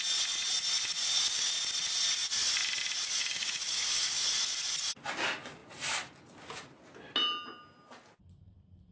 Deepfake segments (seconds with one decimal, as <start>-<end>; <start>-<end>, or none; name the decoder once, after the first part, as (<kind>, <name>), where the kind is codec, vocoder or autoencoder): 1.0-1.5 (codec, DAC); 3.2-4.2